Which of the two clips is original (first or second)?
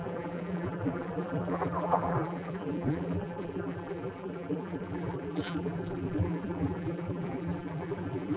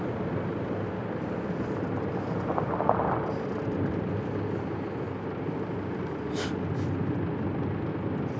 second